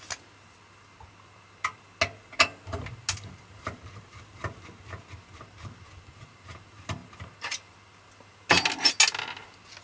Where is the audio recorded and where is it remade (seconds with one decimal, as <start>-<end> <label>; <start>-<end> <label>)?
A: 0.0-9.8 recorded